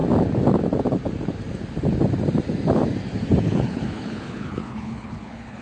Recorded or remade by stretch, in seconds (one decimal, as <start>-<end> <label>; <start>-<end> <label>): 0.0-3.4 recorded; 3.4-5.6 remade